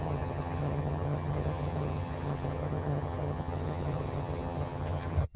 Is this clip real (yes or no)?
no